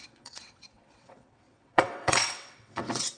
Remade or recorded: remade